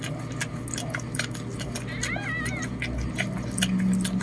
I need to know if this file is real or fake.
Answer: real